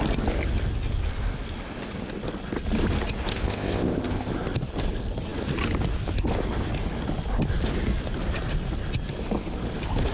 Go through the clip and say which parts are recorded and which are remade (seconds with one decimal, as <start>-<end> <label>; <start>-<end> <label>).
0.0-3.3 recorded; 3.3-4.3 remade; 4.3-10.1 recorded